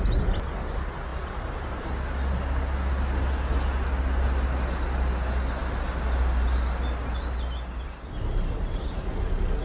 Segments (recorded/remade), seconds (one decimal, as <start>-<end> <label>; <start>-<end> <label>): 0.0-1.1 recorded; 1.1-1.9 remade; 1.9-9.6 recorded